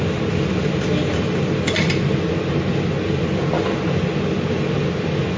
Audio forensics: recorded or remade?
recorded